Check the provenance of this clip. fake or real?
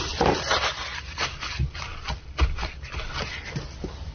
real